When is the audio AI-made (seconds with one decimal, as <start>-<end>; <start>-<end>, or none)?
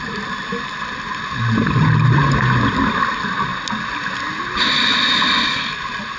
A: none